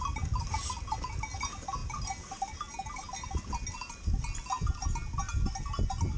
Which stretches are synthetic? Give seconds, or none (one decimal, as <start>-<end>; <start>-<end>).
none